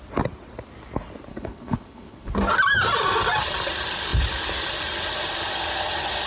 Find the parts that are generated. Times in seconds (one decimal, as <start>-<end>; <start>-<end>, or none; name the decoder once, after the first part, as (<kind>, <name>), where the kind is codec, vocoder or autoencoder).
1.3-2.3 (codec, HILCodec)